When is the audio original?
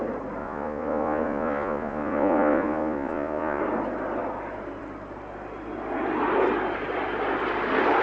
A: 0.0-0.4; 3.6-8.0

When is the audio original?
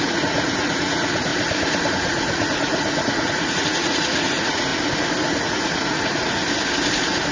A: 1.3-1.9; 4.7-5.4; 6.4-7.3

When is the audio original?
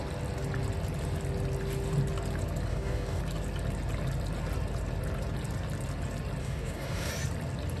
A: 0.0-2.7; 3.2-6.4; 7.1-7.8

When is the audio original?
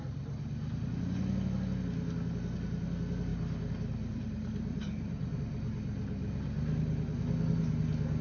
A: 0.0-3.3; 5.4-8.2